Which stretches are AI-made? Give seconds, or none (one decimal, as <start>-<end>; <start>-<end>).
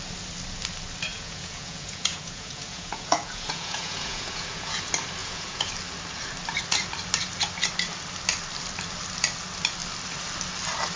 1.1-4.8; 5.2-5.7